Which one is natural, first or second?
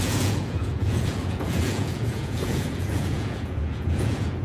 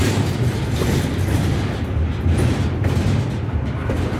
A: second